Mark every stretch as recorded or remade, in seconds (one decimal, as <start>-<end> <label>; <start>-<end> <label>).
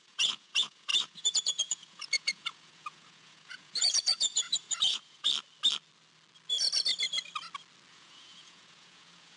0.0-5.3 remade; 5.3-7.9 recorded; 7.9-9.4 remade